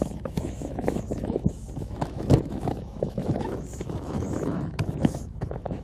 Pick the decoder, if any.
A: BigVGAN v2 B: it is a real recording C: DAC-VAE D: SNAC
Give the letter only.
C